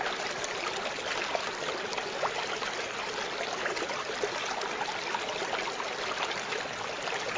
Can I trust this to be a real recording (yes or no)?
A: yes